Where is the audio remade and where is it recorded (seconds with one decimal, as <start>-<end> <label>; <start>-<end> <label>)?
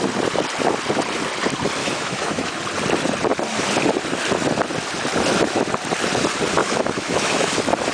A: 0.0-1.8 recorded; 1.8-2.6 remade; 2.6-6.6 recorded; 6.6-7.5 remade; 7.5-7.9 recorded